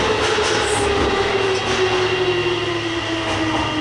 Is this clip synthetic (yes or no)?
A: no